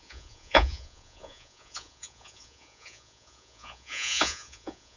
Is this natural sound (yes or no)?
no